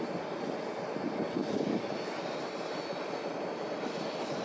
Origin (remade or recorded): recorded